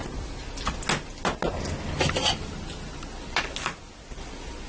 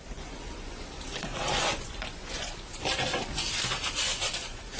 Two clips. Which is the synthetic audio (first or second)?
second